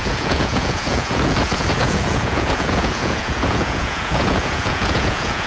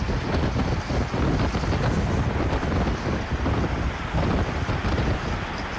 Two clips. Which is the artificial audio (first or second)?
first